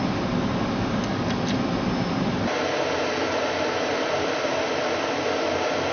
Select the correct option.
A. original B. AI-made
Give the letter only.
A